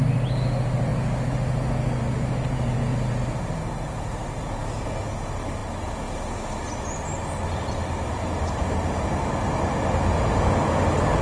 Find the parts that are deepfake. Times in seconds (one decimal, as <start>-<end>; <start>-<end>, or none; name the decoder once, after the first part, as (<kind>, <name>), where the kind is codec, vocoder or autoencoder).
none